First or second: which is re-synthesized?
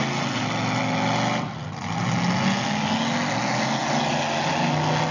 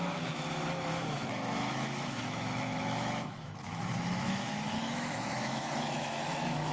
second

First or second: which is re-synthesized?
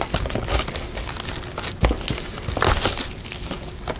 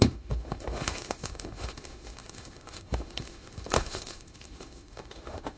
second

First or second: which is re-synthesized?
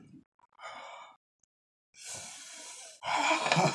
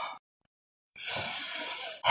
second